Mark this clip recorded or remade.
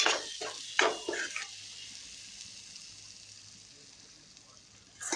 recorded